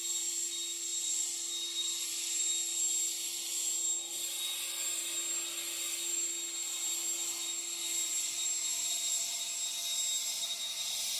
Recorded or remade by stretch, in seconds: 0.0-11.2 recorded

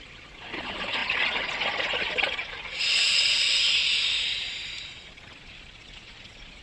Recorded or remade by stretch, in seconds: 0.0-3.9 remade; 3.9-4.8 recorded; 4.8-6.6 remade

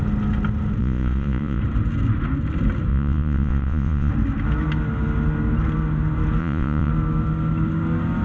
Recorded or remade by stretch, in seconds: 0.0-0.8 recorded; 0.8-1.6 remade; 1.6-2.9 recorded; 2.9-4.1 remade; 4.1-6.4 recorded; 6.4-6.9 remade; 6.9-8.2 recorded

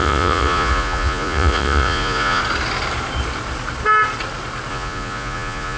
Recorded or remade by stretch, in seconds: 0.0-2.4 remade; 2.4-4.7 recorded; 4.7-5.8 remade